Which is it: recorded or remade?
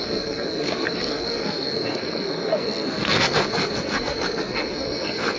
remade